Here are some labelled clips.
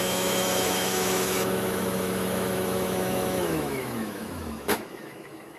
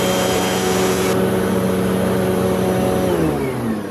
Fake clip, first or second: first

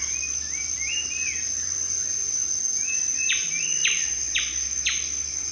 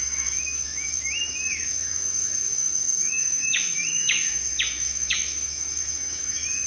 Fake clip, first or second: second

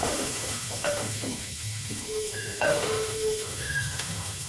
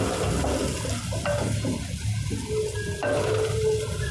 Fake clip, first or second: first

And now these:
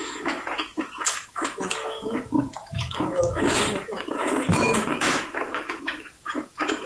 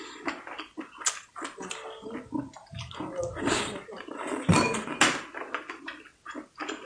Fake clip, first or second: first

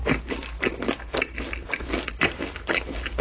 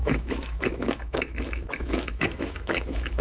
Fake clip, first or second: second